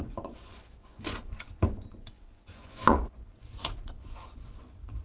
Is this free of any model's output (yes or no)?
no